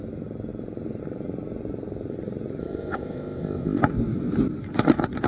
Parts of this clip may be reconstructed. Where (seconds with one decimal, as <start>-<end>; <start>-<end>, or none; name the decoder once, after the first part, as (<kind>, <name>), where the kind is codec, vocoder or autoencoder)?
2.6-3.8 (codec, ZipCodec)